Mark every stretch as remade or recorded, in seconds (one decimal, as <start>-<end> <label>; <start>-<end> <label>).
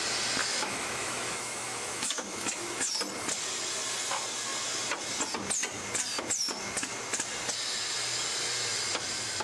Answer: 0.0-0.4 recorded; 0.4-2.9 remade; 2.9-9.4 recorded